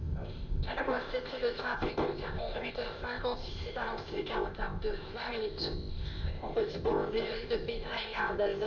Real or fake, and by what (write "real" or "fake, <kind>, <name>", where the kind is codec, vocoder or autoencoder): fake, codec, ZipCodec